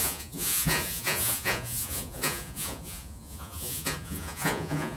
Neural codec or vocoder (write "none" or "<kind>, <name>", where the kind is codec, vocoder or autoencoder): vocoder, Vocos